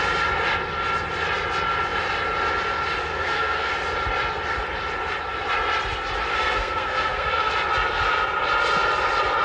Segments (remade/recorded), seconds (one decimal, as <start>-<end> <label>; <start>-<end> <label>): 0.0-3.0 recorded; 3.0-3.7 remade; 3.7-6.3 recorded; 6.3-7.5 remade; 7.5-9.4 recorded